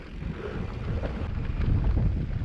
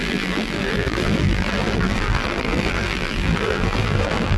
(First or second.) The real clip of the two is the first